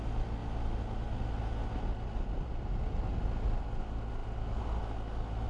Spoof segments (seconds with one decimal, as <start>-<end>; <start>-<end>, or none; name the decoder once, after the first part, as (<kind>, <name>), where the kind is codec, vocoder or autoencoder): none